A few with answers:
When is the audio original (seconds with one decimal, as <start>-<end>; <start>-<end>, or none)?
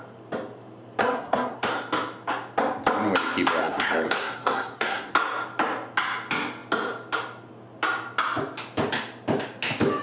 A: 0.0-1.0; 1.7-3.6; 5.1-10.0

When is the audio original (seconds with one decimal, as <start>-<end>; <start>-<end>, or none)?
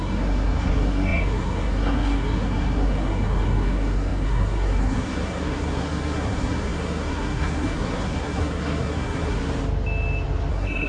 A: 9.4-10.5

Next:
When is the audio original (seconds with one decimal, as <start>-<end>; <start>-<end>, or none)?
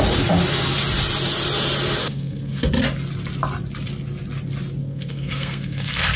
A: 0.0-2.0; 2.7-4.8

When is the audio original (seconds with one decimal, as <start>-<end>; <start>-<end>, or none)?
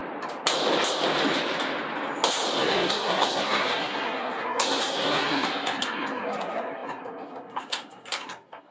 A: 0.0-2.6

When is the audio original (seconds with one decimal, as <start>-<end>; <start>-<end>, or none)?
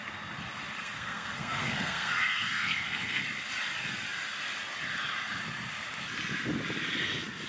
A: 0.0-0.8; 3.2-7.5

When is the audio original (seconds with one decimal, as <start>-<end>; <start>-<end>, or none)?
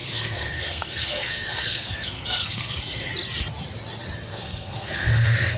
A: 3.1-4.3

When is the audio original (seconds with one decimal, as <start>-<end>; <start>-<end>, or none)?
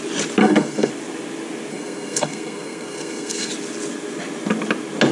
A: 0.0-0.4; 0.9-1.7; 3.5-5.1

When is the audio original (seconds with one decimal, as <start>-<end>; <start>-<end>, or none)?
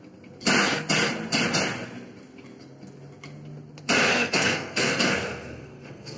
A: 0.0-4.1